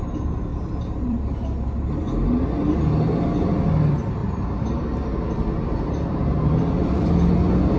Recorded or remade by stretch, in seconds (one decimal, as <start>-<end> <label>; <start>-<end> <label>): 0.0-0.5 recorded; 0.5-1.9 remade; 1.9-4.2 recorded; 4.2-7.1 remade; 7.1-7.8 recorded